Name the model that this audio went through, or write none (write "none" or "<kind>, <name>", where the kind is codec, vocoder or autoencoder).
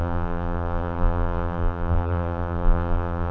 vocoder, BigVGAN v2